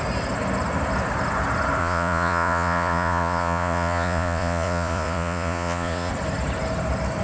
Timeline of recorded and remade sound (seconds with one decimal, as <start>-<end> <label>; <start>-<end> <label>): 0.0-1.8 recorded; 1.8-6.1 remade; 6.1-7.2 recorded